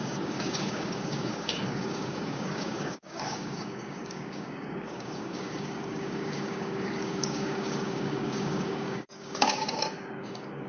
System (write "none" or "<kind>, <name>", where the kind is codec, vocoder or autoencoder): codec, DAC